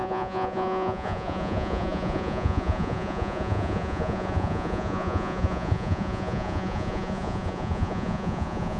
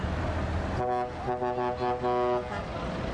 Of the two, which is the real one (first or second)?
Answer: second